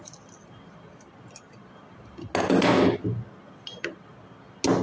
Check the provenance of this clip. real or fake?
real